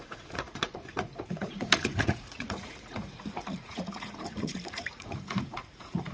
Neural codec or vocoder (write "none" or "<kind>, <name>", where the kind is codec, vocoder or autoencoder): vocoder, Vocos